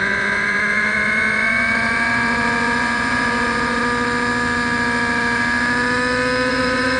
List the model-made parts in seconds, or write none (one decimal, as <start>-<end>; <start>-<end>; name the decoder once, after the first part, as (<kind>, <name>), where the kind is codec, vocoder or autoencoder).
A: 0.0-3.8 (vocoder, Vocos); 6.5-7.0